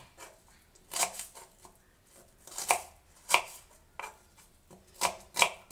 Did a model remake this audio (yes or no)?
no